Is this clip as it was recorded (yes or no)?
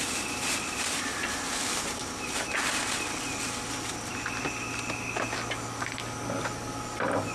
yes